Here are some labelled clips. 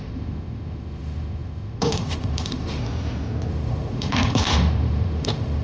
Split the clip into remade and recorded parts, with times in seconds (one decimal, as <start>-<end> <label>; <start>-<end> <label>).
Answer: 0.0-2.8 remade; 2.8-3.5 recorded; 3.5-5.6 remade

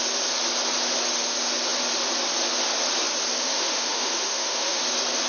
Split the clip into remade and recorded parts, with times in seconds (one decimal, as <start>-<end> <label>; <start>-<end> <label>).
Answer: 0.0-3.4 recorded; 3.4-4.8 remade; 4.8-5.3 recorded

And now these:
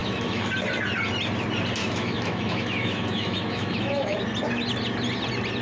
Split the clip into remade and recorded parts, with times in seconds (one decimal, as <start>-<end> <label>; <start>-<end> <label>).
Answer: 0.0-0.5 remade; 0.5-1.8 recorded; 1.8-4.2 remade; 4.2-5.6 recorded

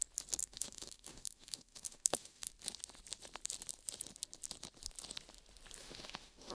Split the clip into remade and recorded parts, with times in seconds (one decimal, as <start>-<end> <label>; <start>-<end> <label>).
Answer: 0.0-0.4 recorded; 0.4-2.5 remade; 2.5-5.8 recorded; 5.8-6.5 remade